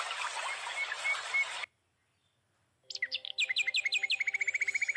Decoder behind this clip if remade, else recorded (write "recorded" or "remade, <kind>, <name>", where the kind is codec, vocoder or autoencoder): recorded